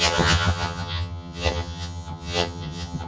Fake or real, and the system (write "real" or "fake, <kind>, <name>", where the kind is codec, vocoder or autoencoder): fake, vocoder, HiFi-GAN